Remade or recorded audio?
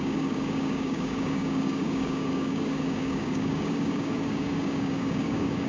remade